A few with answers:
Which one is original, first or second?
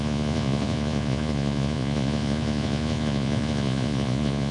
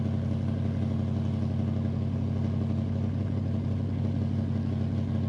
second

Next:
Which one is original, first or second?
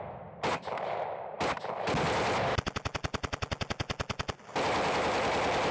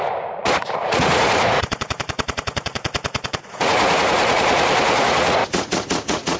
first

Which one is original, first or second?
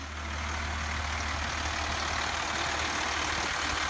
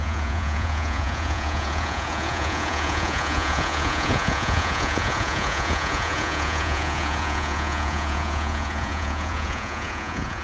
first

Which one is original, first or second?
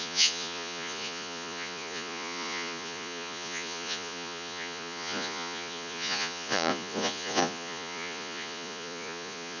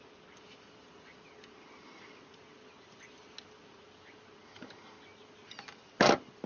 second